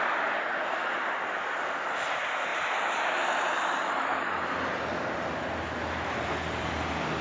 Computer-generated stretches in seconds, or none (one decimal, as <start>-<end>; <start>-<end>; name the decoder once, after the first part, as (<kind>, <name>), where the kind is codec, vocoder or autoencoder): none